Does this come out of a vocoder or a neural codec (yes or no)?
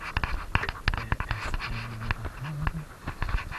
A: no